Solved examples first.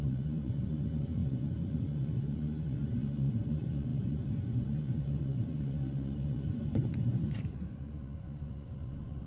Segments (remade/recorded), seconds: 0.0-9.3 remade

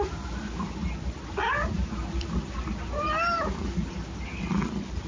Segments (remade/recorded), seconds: 0.0-5.1 recorded

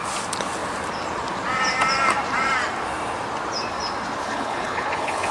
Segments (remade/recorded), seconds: 0.0-4.2 recorded; 4.2-5.3 remade

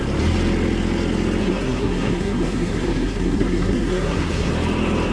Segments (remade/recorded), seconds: 0.0-1.4 recorded; 1.4-4.5 remade; 4.5-5.1 recorded

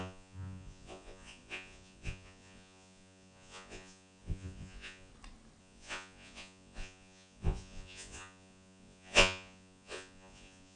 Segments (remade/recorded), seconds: 0.0-5.1 remade; 5.1-5.6 recorded; 5.6-10.8 remade

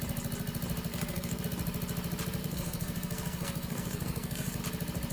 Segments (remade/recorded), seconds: 0.0-0.9 recorded; 0.9-1.4 remade; 1.4-2.4 recorded; 2.4-4.6 remade; 4.6-5.1 recorded

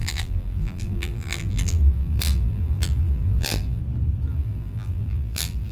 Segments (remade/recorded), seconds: 0.0-3.8 remade; 3.8-4.3 recorded; 4.3-5.7 remade